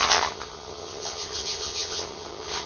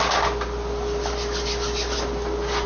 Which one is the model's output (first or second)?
first